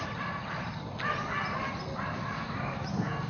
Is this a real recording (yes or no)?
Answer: yes